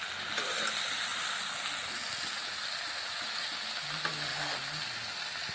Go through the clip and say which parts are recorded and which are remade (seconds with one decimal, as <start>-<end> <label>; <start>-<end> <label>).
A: 0.0-5.5 recorded

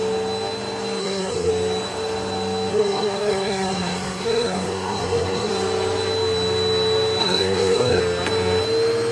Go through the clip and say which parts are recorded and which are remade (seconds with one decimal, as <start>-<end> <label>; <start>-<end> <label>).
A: 0.0-1.0 recorded; 1.0-1.5 remade; 1.5-2.7 recorded; 2.7-5.5 remade; 5.5-7.2 recorded; 7.2-8.0 remade; 8.0-9.1 recorded

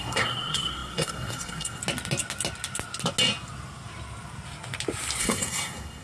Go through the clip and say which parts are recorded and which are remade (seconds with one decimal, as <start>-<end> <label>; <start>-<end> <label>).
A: 0.0-1.8 remade; 1.8-5.2 recorded; 5.2-6.0 remade

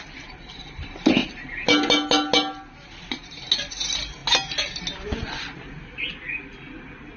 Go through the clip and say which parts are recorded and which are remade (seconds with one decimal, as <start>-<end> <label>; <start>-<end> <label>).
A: 0.0-7.2 recorded